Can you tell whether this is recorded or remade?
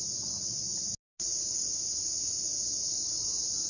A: recorded